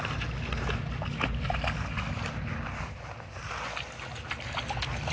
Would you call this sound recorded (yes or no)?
yes